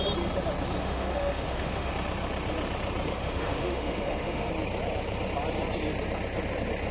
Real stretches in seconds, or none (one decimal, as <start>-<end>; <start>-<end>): 0.0-0.8; 1.9-3.2; 4.5-6.9